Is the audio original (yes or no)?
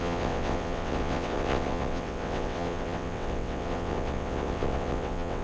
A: no